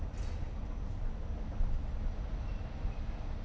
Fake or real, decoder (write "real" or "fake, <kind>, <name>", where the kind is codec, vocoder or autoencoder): real